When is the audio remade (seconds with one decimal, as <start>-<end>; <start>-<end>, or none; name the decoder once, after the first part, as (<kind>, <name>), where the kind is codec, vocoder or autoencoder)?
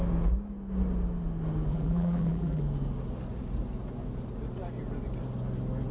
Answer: 1.7-2.6 (vocoder, BigVGAN v2)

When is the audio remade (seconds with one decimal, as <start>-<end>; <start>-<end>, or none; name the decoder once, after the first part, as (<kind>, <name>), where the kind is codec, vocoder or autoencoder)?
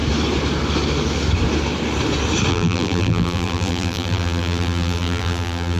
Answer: 2.5-5.8 (vocoder, BigVGAN v2)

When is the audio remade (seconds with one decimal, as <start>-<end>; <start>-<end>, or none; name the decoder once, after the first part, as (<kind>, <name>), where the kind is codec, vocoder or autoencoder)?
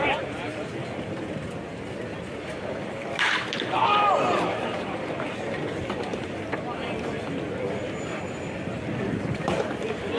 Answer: 0.0-8.7 (vocoder, BigVGAN v2); 9.2-10.2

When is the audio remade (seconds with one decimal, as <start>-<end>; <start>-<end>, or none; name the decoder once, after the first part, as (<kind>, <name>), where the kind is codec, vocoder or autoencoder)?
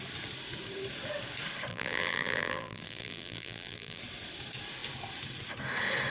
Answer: 1.7-4.0 (vocoder, BigVGAN v2)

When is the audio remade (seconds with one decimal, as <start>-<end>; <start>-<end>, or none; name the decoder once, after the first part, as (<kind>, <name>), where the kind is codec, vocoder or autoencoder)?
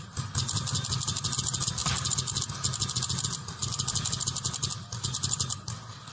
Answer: none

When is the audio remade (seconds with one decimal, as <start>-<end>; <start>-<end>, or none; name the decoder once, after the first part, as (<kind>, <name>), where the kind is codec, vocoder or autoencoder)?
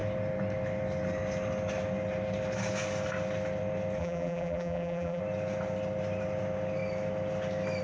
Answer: 4.0-5.2 (vocoder, BigVGAN v2)